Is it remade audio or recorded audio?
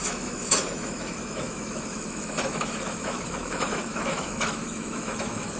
remade